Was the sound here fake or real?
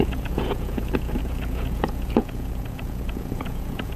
fake